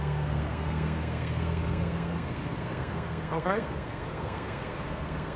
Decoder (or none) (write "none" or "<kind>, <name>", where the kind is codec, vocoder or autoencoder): codec, SNAC